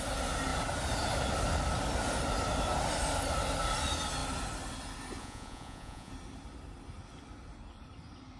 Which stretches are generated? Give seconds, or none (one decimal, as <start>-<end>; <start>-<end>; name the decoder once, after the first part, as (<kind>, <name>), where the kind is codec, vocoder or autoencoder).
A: 5.2-6.1 (vocoder, Vocos)